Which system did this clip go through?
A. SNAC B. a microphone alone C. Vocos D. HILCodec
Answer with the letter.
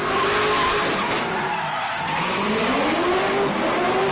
B